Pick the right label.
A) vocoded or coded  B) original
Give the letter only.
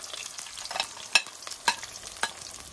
B